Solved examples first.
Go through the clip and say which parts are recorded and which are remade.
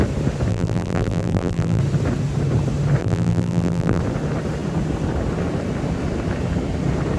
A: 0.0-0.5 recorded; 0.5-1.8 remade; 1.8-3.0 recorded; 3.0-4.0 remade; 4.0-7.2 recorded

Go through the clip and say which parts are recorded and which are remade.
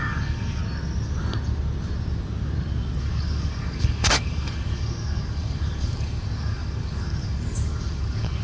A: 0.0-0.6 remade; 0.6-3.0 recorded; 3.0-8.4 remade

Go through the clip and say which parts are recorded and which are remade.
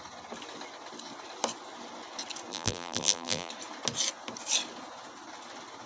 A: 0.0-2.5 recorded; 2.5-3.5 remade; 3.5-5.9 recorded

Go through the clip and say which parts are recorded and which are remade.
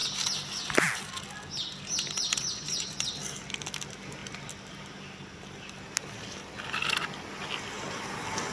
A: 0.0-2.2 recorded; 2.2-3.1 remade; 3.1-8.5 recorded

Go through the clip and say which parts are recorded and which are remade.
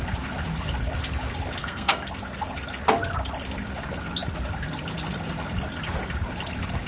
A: 0.0-1.6 recorded; 1.6-2.1 remade; 2.1-6.9 recorded